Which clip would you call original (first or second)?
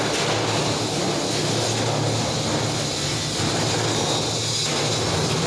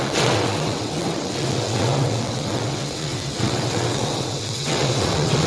first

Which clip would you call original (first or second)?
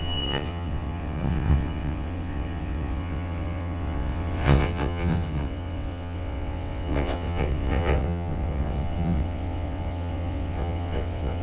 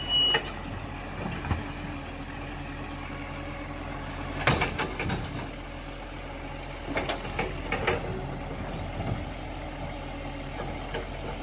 second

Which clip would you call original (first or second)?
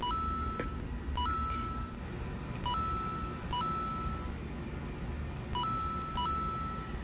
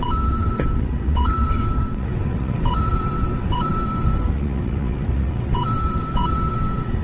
first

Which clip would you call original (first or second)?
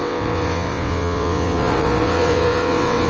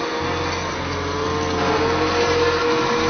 second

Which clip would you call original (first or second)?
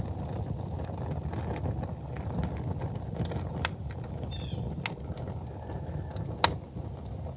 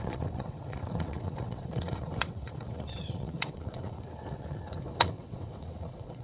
first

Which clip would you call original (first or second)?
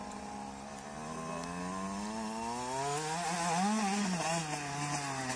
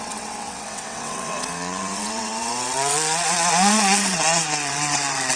first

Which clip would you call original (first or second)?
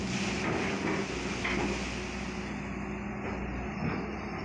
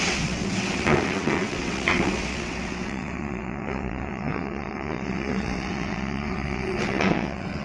first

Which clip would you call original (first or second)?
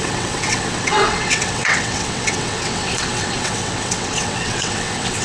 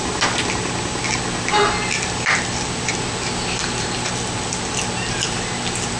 second